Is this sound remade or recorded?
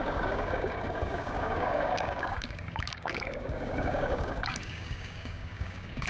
remade